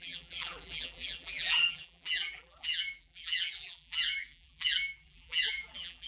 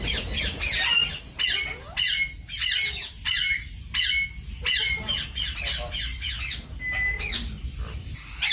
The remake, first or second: first